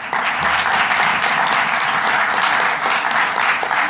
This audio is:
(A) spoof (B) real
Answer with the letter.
B